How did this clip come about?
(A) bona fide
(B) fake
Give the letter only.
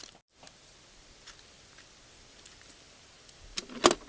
A